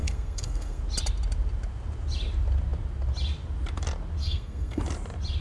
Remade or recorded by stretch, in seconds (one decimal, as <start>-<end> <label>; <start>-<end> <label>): 0.0-0.8 remade; 0.8-4.2 recorded; 4.2-4.8 remade; 4.8-5.4 recorded